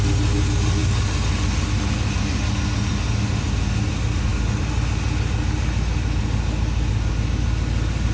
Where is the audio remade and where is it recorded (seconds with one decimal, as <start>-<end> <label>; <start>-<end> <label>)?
0.0-8.1 recorded